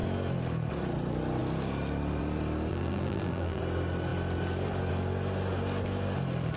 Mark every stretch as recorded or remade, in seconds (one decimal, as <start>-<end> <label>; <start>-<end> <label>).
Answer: 0.0-2.7 recorded; 2.7-3.6 remade; 3.6-6.6 recorded